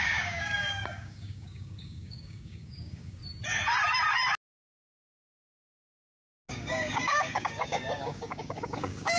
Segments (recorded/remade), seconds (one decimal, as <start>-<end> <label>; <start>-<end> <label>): 0.0-3.2 remade; 3.2-6.5 recorded; 6.5-9.2 remade